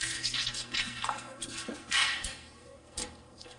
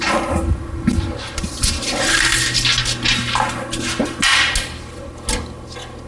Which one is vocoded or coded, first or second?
first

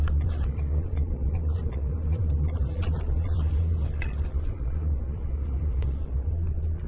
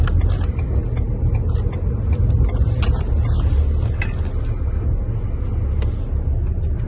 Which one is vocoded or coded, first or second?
first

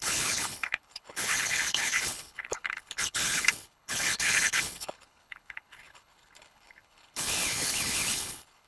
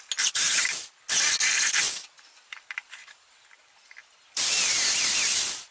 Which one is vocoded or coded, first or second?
first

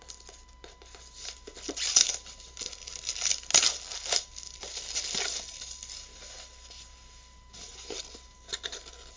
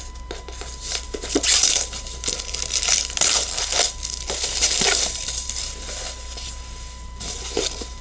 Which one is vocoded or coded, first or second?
second